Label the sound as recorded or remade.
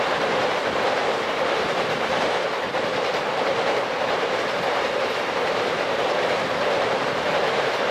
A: remade